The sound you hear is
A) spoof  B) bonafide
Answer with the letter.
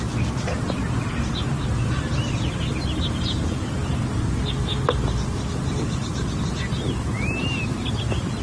B